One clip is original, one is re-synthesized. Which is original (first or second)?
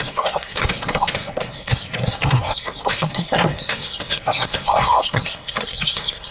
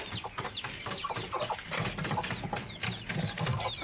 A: second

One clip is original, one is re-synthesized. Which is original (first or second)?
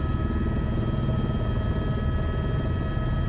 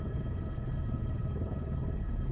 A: first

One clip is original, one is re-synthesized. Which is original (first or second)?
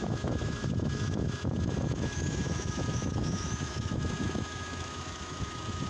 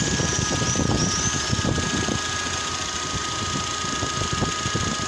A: second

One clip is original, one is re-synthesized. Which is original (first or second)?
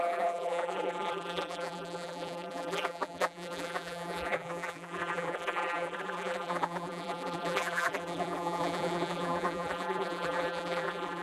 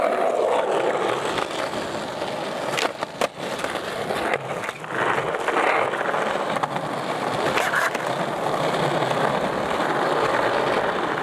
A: second